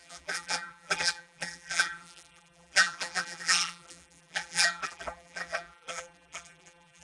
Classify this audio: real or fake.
fake